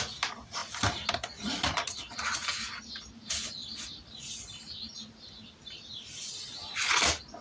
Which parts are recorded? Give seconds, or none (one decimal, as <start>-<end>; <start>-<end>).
0.0-7.4